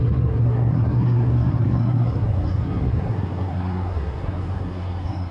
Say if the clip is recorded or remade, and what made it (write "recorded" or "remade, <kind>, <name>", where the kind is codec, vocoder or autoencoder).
remade, codec, SNAC